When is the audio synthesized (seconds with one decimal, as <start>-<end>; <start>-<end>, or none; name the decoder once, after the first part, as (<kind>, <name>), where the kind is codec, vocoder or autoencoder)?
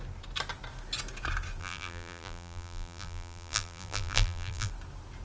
1.6-4.7 (vocoder, BigVGAN v2)